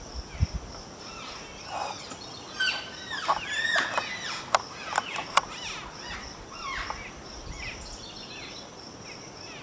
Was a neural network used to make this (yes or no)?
no